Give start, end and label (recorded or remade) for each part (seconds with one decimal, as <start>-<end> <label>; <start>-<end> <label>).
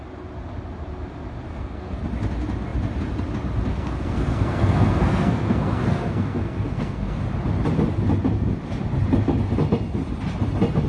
0.0-1.5 recorded; 1.5-2.0 remade; 2.0-3.7 recorded; 3.7-7.2 remade; 7.2-10.9 recorded